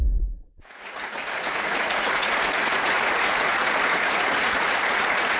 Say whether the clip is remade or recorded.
remade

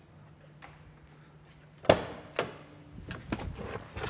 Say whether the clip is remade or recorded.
recorded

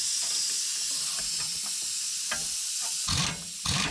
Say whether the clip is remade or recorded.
recorded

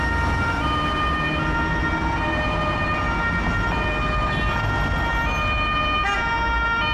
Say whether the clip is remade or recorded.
recorded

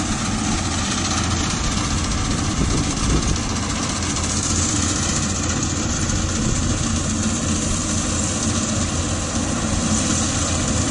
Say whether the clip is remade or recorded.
recorded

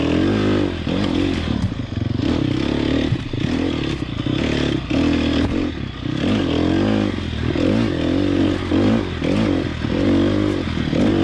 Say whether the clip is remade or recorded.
recorded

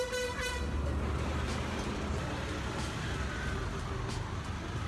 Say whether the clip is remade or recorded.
recorded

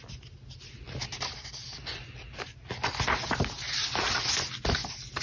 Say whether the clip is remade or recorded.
recorded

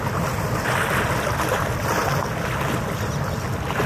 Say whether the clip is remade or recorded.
recorded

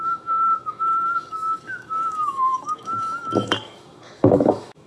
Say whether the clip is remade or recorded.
remade